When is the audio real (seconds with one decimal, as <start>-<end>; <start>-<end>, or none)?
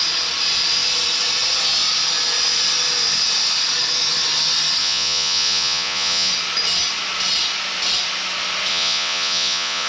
0.0-4.8; 6.3-8.7